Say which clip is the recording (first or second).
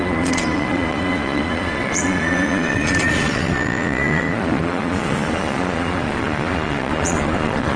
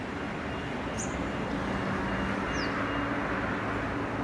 second